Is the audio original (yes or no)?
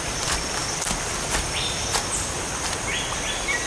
yes